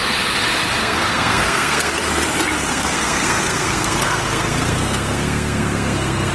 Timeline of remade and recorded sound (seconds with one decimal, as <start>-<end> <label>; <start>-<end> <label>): 0.0-0.8 recorded; 0.8-1.9 remade; 1.9-2.7 recorded; 2.7-6.3 remade